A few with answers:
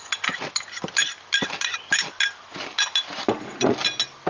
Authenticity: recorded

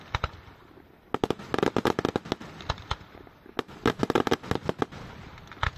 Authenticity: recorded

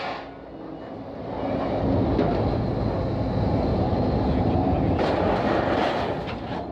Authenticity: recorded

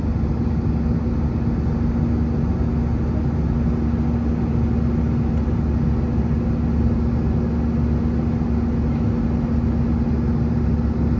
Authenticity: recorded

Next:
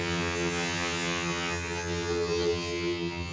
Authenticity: remade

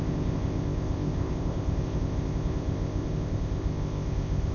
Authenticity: remade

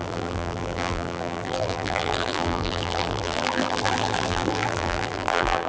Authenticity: remade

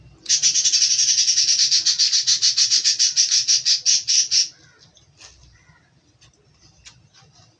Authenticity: recorded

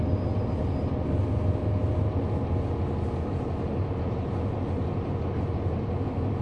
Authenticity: recorded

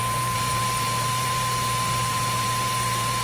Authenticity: remade